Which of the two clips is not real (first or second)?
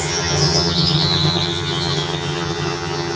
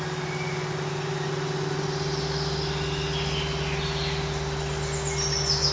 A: first